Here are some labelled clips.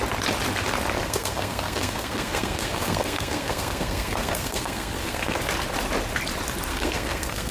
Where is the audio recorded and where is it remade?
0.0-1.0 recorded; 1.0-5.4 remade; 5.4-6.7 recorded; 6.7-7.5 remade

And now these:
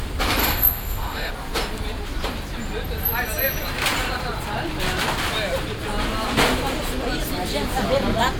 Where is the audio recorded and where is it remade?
0.0-0.4 recorded; 0.4-1.3 remade; 1.3-8.4 recorded

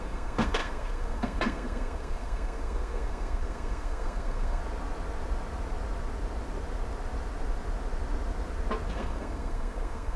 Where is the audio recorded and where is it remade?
0.0-4.6 remade; 4.6-8.9 recorded; 8.9-10.2 remade

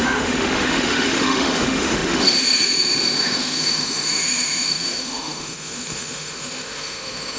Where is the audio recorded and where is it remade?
0.0-7.4 remade